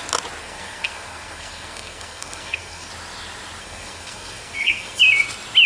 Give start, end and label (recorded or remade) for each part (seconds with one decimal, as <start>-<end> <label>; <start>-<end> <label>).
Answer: 0.0-0.4 recorded; 0.4-2.9 remade; 2.9-3.6 recorded; 3.6-5.0 remade; 5.0-5.7 recorded